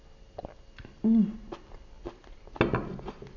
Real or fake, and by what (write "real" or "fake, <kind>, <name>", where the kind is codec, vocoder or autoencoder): real